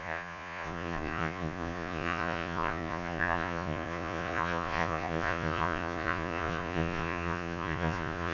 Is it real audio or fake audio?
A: fake